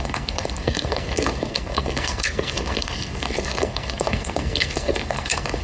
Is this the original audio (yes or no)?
no